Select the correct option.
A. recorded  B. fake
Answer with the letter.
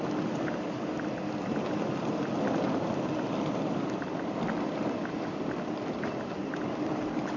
A